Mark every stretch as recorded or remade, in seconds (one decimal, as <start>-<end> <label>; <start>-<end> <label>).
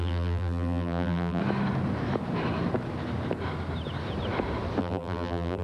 0.0-1.4 remade; 1.4-4.8 recorded; 4.8-5.6 remade